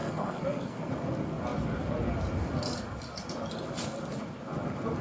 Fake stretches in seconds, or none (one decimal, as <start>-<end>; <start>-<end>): 0.0-0.9